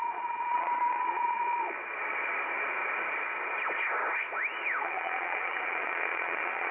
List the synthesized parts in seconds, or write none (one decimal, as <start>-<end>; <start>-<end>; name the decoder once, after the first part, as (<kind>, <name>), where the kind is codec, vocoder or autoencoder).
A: 0.0-1.4 (vocoder, Vocos); 4.8-6.7

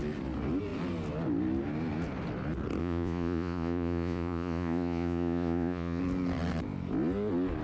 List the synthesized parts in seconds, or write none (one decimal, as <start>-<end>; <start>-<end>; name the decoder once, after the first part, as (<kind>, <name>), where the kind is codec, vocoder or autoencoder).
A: 2.8-6.0 (vocoder, Vocos)